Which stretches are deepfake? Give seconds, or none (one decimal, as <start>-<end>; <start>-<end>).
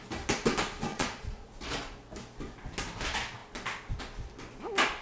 0.9-1.5